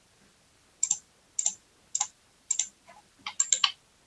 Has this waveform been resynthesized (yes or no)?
no